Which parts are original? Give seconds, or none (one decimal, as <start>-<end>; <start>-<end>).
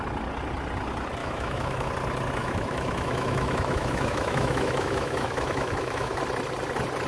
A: 0.0-1.2; 1.9-2.4; 6.2-7.1